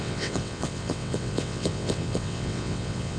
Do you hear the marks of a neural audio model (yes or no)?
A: yes